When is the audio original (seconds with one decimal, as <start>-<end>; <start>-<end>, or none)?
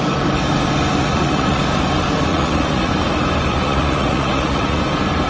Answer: 0.0-1.0; 1.6-2.3; 2.9-3.5; 4.8-5.3